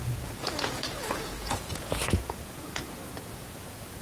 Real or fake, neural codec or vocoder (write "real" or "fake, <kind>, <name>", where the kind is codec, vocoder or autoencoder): fake, vocoder, Vocos